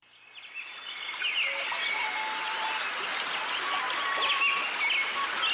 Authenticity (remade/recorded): recorded